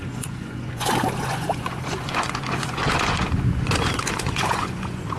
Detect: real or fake fake